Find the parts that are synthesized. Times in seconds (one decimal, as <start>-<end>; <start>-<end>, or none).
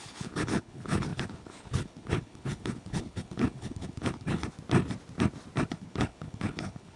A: 0.0-4.4; 5.7-7.0